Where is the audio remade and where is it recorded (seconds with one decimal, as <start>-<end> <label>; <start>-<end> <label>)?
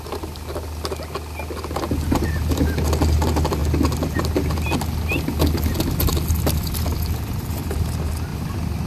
0.0-8.9 recorded